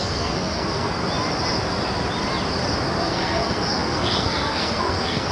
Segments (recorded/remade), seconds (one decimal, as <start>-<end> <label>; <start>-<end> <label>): 0.0-1.0 remade; 1.0-3.0 recorded; 3.0-5.3 remade